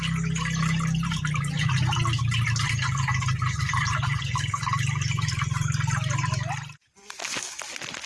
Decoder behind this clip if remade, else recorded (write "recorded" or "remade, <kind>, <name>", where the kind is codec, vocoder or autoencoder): recorded